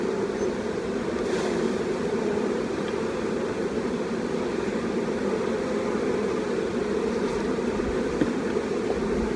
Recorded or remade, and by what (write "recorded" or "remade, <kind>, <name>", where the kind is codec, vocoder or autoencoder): recorded